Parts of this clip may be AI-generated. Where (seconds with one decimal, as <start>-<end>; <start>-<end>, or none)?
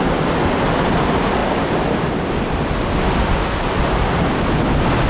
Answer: none